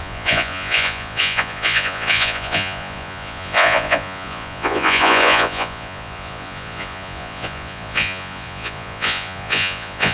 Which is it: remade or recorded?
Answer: remade